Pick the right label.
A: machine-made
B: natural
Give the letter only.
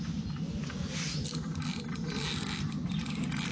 B